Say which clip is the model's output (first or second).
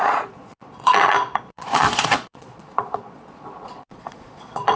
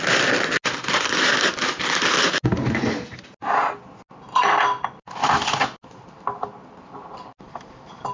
first